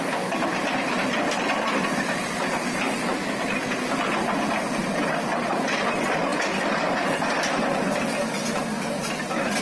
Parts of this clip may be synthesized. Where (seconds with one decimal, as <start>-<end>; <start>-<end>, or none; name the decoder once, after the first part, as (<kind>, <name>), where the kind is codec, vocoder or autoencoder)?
none